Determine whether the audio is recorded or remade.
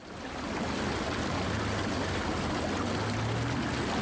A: recorded